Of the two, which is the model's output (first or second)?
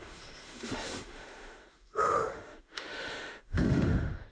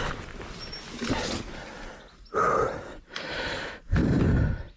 first